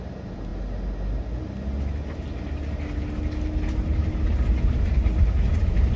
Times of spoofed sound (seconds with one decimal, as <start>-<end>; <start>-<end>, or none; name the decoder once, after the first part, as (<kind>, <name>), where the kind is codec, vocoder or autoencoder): none